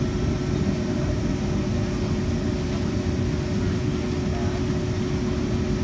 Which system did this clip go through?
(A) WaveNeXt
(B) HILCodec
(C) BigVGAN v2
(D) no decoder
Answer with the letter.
D